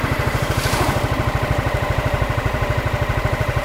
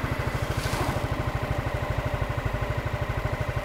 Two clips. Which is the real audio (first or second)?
second